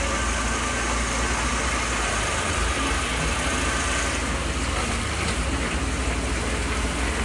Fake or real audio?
real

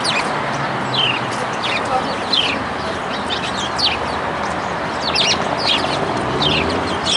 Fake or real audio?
real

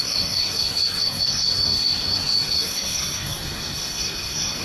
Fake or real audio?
fake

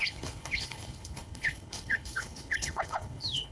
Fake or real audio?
fake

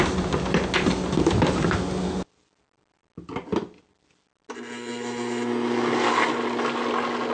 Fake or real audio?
real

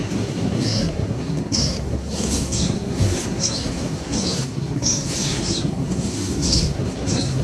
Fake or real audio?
fake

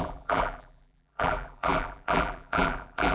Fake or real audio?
fake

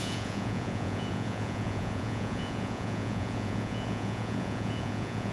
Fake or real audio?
fake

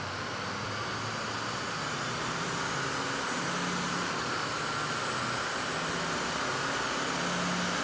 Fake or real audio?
real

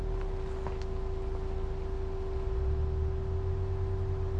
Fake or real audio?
real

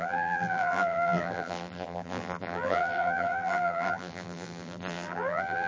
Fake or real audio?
fake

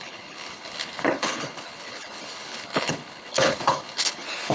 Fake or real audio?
fake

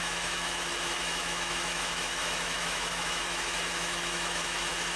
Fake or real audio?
fake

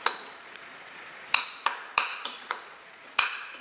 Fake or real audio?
fake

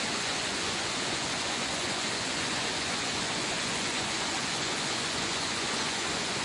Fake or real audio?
fake